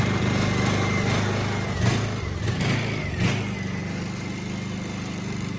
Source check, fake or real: real